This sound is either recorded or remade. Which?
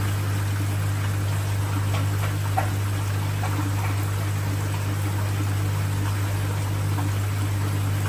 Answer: recorded